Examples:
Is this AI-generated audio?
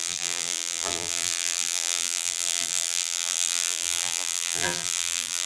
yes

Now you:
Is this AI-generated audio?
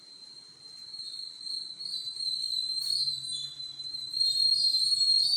yes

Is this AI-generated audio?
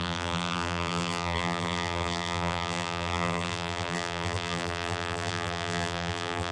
yes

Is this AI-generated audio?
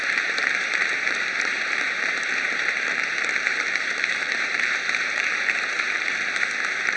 yes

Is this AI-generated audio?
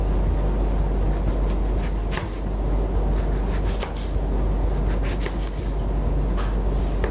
no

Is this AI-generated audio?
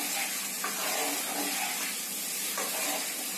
no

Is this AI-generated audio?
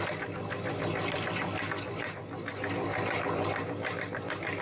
no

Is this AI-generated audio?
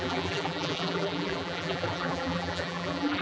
yes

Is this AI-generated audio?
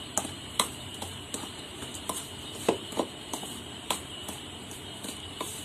yes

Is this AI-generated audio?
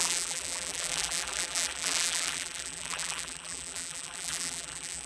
yes